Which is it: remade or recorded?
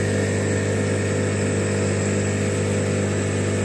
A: recorded